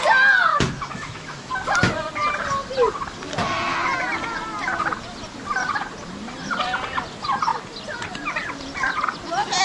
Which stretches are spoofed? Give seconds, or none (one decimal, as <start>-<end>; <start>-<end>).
0.5-1.5